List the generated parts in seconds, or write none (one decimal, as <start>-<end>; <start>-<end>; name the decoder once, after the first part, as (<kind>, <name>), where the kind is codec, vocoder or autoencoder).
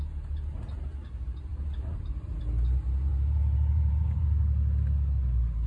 3.1-4.2 (vocoder, BigVGAN v2)